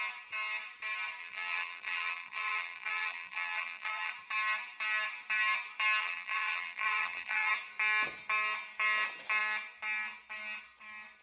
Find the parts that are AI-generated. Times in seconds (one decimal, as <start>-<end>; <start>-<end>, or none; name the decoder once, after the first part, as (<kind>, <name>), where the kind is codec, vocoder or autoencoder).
1.2-4.1 (vocoder, BigVGAN v2); 6.0-7.5